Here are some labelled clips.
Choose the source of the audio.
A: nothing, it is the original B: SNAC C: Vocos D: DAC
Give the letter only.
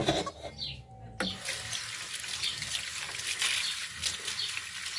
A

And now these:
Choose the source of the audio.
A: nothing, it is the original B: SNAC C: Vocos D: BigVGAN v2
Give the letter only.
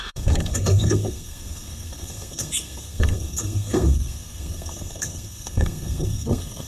B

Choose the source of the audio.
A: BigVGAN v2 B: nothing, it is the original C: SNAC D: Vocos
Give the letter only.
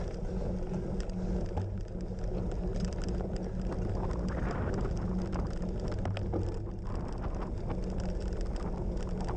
B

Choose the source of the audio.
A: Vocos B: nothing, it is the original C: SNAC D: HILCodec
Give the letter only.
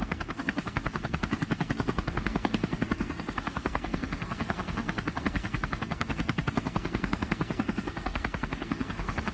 C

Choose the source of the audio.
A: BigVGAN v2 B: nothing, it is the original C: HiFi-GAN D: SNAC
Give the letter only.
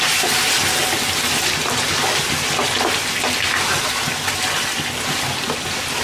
B